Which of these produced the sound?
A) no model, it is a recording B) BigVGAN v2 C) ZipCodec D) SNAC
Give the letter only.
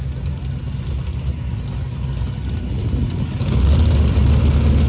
A